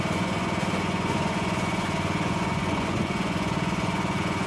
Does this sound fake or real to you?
fake